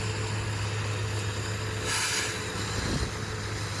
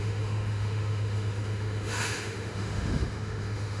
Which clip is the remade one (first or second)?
second